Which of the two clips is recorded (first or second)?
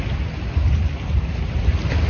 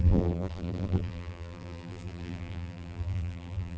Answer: first